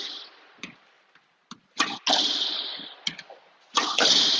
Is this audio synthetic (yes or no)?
no